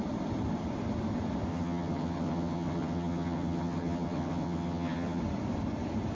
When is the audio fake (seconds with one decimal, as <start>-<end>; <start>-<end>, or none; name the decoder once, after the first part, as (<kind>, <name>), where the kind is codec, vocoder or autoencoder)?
1.5-5.2 (vocoder, HiFi-GAN)